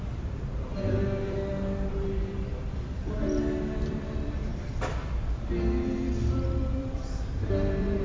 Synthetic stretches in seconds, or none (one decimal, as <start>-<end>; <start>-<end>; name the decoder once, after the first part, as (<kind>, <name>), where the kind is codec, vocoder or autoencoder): 0.0-4.5 (vocoder, BigVGAN v2); 6.3-8.0